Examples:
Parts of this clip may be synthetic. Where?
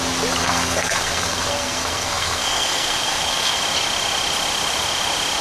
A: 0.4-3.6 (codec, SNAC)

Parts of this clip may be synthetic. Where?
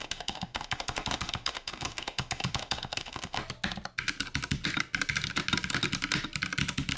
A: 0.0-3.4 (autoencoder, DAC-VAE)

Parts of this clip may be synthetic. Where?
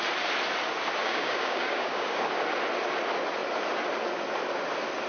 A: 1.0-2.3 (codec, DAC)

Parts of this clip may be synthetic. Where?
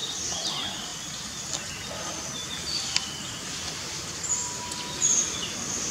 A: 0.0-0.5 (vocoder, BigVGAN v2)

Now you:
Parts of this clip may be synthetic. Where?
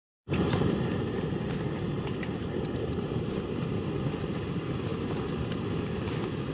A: 0.0-3.9 (vocoder, BigVGAN v2); 4.9-5.6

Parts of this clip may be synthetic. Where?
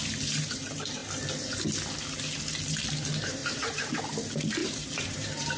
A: 3.4-4.0 (vocoder, BigVGAN v2); 4.6-5.6